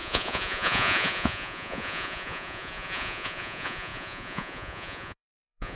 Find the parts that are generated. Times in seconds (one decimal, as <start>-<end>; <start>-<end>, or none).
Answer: 0.0-5.7

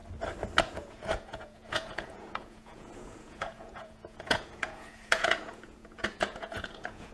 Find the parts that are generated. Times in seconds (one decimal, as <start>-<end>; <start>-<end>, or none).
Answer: 0.6-7.1

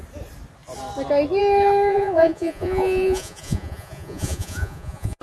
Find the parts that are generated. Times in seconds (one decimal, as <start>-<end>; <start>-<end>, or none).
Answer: 1.9-5.2

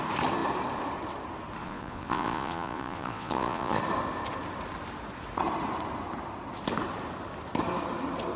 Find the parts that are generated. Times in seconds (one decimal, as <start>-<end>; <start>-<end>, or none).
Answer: 1.6-3.8

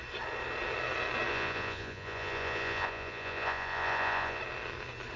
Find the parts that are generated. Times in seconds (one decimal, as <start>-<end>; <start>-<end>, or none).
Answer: 1.3-4.4